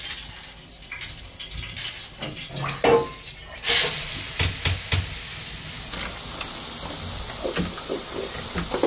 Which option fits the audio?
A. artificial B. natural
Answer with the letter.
B